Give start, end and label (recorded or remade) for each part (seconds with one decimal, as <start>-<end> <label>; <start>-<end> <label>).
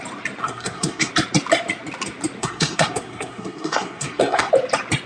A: 0.0-0.4 recorded; 0.4-1.1 remade; 1.1-2.4 recorded; 2.4-4.5 remade; 4.5-5.1 recorded